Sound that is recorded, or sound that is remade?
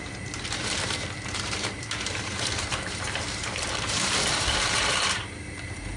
remade